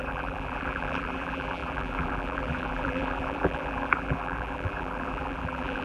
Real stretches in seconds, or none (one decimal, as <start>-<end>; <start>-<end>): none